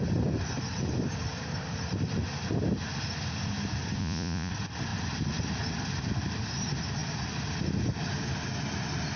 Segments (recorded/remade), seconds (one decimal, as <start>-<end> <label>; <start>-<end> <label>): 0.0-4.0 recorded; 4.0-4.5 remade; 4.5-9.2 recorded